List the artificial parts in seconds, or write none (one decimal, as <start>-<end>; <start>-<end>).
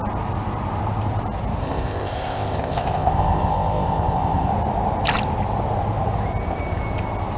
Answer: 1.6-4.5